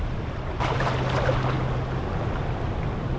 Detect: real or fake real